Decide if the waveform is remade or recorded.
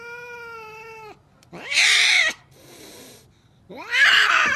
recorded